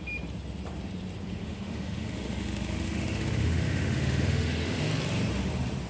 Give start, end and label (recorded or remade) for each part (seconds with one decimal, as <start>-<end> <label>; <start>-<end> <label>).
0.0-1.4 recorded; 1.4-4.9 remade; 4.9-5.9 recorded